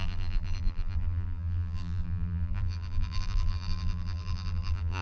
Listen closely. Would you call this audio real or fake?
fake